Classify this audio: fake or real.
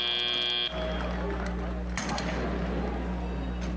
real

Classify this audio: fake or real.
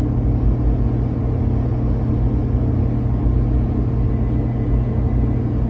real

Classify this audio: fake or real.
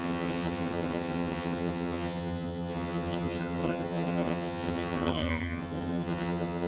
fake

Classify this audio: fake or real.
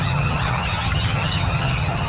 fake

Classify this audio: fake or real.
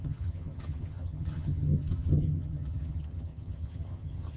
fake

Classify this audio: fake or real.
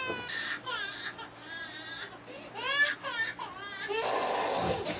real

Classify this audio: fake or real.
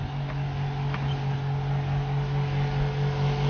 real